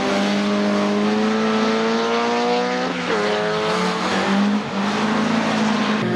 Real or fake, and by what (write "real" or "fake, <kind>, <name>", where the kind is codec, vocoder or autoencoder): real